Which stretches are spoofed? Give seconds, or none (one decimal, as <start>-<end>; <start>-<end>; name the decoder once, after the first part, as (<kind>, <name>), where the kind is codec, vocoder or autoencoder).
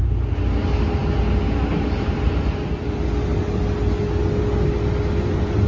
none